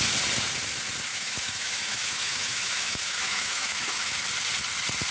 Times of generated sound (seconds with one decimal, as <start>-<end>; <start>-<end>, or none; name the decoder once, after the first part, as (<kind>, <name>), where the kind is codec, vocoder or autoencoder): 1.1-4.2 (autoencoder, DAC-VAE)